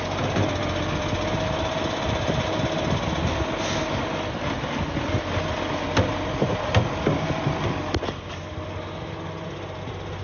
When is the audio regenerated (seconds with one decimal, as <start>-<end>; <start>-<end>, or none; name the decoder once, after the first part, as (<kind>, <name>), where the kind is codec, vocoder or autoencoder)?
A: none